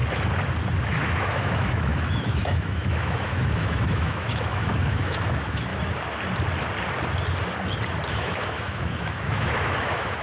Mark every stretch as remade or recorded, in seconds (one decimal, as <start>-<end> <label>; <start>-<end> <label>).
0.0-0.8 recorded; 0.8-5.7 remade; 5.7-8.1 recorded; 8.1-10.2 remade